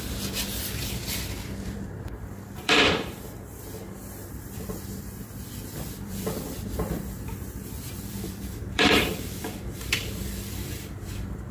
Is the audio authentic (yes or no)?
no